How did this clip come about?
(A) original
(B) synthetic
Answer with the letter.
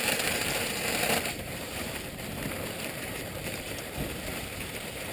B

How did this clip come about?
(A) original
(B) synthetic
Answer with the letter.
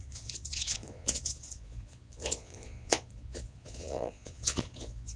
B